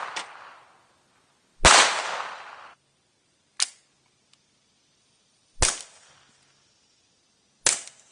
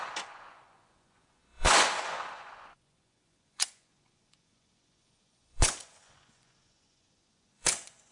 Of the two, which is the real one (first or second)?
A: first